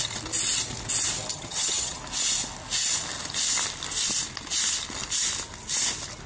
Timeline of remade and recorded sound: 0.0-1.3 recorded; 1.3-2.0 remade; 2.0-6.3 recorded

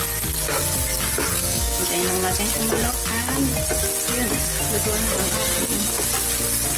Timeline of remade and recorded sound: 0.0-1.3 recorded; 1.3-1.8 remade; 1.8-6.8 recorded

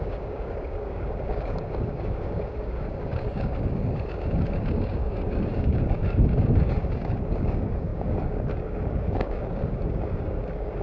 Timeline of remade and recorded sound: 0.0-10.8 remade

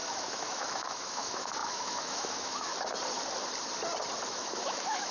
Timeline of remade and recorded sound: 0.0-2.7 remade; 2.7-4.3 recorded; 4.3-5.1 remade

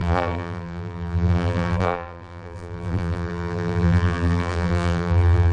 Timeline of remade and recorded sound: 0.0-5.5 remade

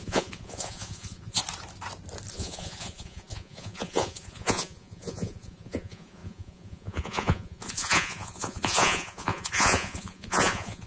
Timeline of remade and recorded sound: 0.0-1.4 remade; 1.4-2.3 recorded; 2.3-10.9 remade

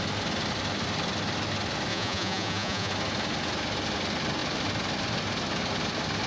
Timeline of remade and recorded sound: 0.0-1.9 recorded; 1.9-2.9 remade; 2.9-6.3 recorded

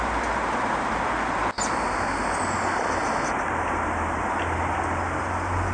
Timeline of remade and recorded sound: 0.0-5.7 recorded